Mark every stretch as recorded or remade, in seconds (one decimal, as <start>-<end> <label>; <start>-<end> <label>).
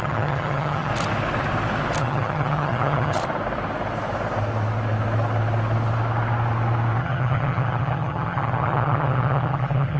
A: 0.0-0.9 remade; 0.9-2.0 recorded; 2.0-3.2 remade; 3.2-7.0 recorded; 7.0-10.0 remade